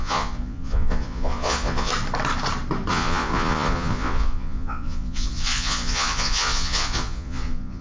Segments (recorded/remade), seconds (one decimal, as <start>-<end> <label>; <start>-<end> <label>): 0.0-1.9 remade; 1.9-2.9 recorded; 2.9-7.8 remade